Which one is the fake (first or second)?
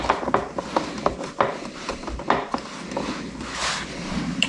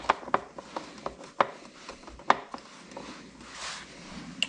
first